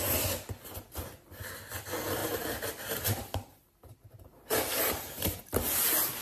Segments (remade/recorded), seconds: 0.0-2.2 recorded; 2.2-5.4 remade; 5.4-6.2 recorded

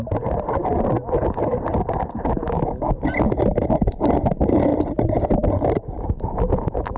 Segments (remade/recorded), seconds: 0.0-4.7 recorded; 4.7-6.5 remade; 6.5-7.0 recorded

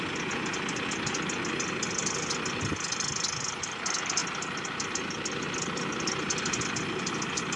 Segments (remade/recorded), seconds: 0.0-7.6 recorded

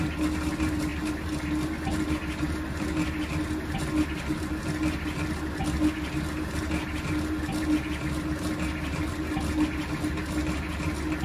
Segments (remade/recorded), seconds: 0.0-11.2 recorded

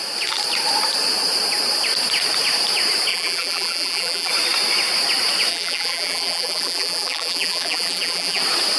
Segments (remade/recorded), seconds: 0.0-3.1 recorded; 3.1-4.3 remade; 4.3-5.5 recorded; 5.5-8.4 remade; 8.4-8.8 recorded